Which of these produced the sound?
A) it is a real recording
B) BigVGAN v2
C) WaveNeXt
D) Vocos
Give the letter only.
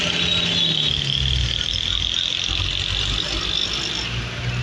A